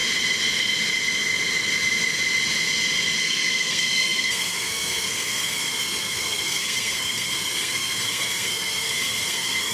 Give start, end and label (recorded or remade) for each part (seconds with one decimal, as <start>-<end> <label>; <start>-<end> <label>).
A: 0.0-3.2 recorded; 3.2-9.7 remade